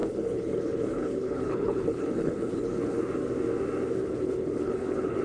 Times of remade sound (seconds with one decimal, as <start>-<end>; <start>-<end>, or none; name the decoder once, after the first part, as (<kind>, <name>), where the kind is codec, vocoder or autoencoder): 0.0-3.1 (codec, HILCodec); 4.0-5.2